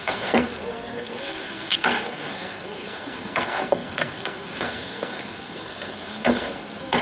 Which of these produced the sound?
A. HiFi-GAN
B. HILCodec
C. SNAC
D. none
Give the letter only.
C